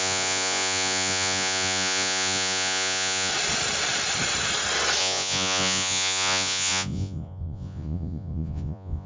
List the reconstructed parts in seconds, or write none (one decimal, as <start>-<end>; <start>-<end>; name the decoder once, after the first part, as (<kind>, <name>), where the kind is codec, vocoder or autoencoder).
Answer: 0.0-3.3 (vocoder, Vocos); 5.0-9.1